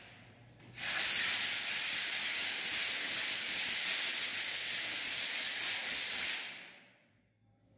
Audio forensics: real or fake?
real